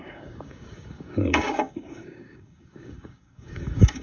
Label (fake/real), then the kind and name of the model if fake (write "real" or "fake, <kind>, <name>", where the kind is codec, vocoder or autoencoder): fake, codec, DAC